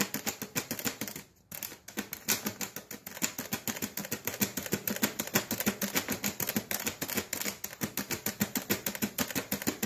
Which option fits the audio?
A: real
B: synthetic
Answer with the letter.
A